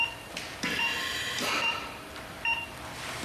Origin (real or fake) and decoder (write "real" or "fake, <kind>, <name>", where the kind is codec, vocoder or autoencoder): fake, vocoder, BigVGAN v2